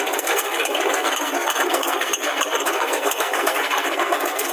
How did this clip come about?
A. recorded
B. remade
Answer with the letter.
B